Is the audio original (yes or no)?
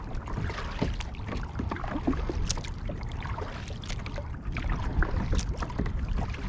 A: yes